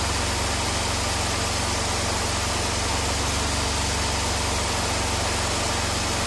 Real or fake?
real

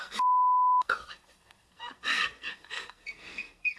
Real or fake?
fake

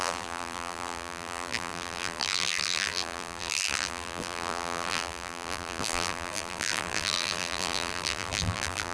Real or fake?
fake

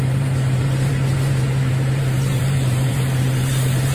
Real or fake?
fake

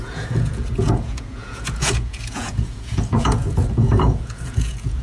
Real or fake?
fake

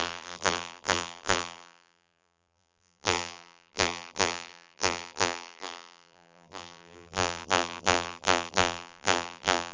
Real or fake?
fake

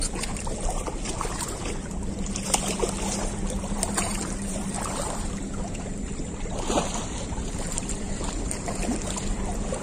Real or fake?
fake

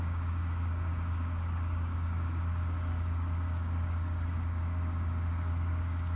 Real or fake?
fake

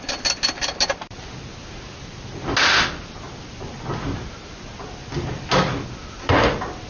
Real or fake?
real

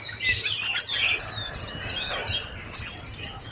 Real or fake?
real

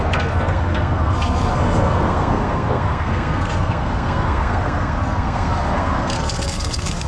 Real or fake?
fake